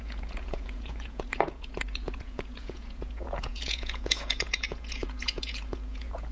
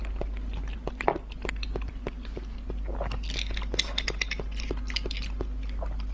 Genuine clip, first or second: second